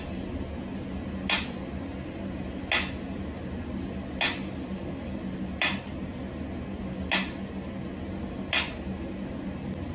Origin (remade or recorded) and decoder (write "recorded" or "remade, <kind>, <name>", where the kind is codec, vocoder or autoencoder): recorded